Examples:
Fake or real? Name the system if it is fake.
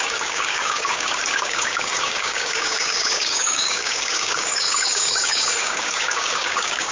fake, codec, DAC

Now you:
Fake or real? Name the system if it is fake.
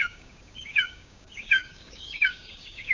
fake, codec, DAC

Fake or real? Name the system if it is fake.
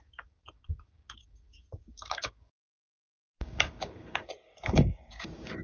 fake, codec, DAC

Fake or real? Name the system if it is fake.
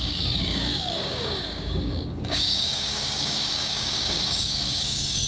fake, codec, DAC